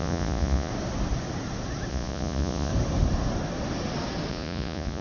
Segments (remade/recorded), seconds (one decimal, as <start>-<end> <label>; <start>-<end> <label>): 0.0-0.7 remade; 0.7-1.9 recorded; 1.9-2.7 remade; 2.7-4.3 recorded; 4.3-5.0 remade